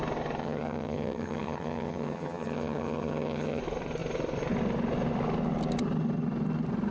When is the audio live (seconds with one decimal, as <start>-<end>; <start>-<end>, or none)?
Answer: 0.0-0.4; 3.6-6.9